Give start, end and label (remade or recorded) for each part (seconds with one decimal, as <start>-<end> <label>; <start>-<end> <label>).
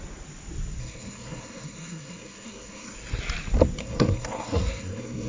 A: 0.0-0.8 recorded; 0.8-3.2 remade; 3.2-3.8 recorded; 3.8-5.3 remade